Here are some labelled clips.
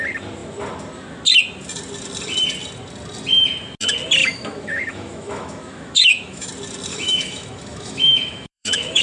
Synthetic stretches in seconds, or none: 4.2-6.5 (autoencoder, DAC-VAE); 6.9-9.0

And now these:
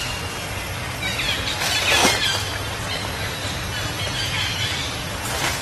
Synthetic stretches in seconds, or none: 2.0-5.6 (vocoder, BigVGAN v2)

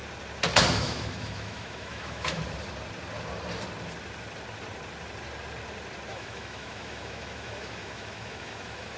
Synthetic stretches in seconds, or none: 0.7-2.4 (autoencoder, DAC-VAE); 6.1-9.0

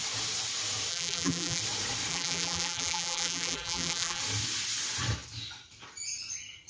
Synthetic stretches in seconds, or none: 0.9-1.6 (vocoder, BigVGAN v2); 2.1-4.2

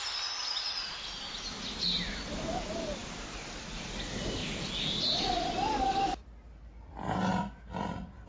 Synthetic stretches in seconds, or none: none

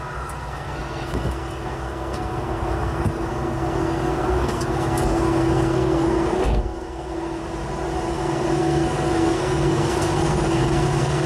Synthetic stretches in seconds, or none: 0.0-7.4 (codec, SNAC); 8.1-11.3

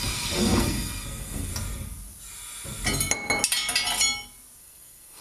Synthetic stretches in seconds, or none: 0.0-1.5 (codec, SNAC); 4.6-5.2

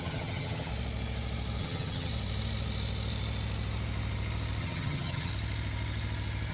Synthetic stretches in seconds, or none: 0.0-0.7 (vocoder, HiFi-GAN); 1.6-2.1; 4.6-5.3